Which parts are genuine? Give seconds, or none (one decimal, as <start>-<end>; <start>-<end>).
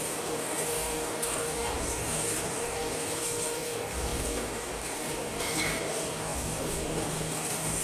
none